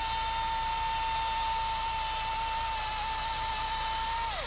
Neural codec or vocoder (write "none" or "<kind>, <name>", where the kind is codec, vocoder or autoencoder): none